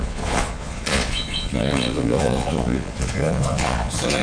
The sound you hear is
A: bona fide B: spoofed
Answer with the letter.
B